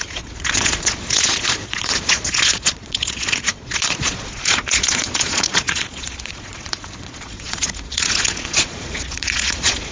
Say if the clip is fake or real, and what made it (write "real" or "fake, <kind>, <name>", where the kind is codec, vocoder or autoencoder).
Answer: fake, vocoder, Vocos